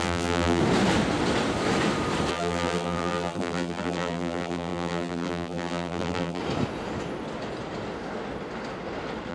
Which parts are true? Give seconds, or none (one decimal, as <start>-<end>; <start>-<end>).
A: 0.6-2.3; 6.4-9.3